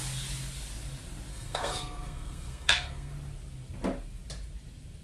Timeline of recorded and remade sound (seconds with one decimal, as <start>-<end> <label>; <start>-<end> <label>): 0.0-1.3 recorded; 1.3-3.1 remade; 3.1-5.0 recorded